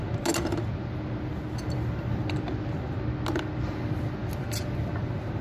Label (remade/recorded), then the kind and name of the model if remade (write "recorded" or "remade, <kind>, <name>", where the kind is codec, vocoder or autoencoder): recorded